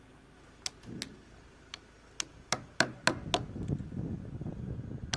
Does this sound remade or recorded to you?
recorded